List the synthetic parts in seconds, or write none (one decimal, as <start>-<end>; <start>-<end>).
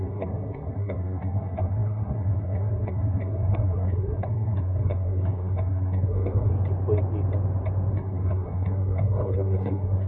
0.0-6.5; 7.9-10.1